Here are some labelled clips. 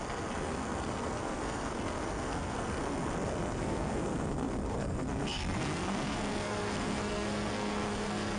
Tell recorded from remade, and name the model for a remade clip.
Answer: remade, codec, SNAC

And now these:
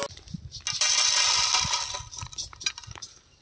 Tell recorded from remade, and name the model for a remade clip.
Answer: recorded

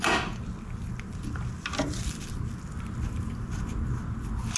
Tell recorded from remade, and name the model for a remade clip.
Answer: recorded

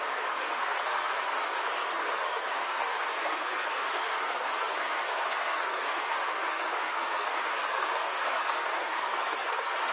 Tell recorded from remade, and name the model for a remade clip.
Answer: remade, codec, SNAC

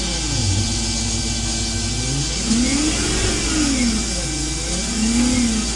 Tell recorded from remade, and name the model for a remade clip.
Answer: recorded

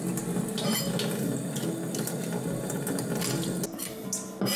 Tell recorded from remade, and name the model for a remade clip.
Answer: recorded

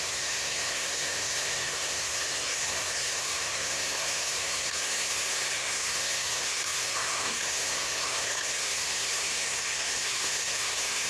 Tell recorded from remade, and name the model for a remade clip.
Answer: remade, codec, SNAC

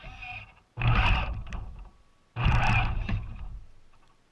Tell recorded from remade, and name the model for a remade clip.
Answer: recorded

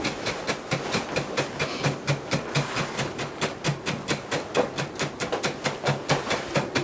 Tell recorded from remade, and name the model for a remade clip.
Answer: recorded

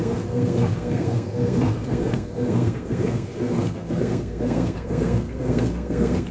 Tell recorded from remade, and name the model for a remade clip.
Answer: remade, codec, SNAC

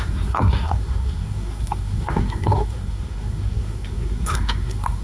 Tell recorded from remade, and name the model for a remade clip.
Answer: remade, codec, SNAC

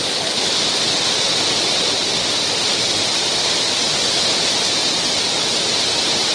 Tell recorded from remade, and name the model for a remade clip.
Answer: recorded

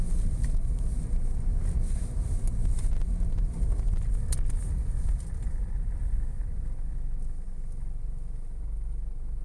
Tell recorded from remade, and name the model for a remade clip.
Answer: recorded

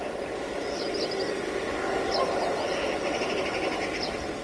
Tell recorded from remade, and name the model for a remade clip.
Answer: recorded